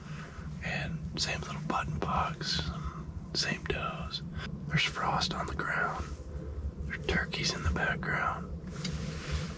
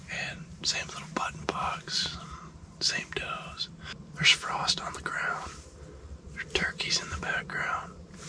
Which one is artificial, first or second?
second